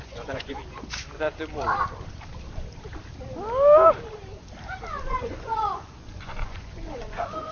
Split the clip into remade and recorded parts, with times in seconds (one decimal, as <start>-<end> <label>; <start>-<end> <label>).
0.0-0.6 remade; 0.6-5.1 recorded; 5.1-7.5 remade